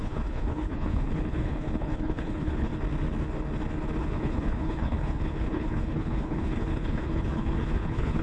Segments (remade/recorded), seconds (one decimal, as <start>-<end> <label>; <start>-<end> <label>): 0.0-2.7 remade; 2.7-4.0 recorded; 4.0-8.2 remade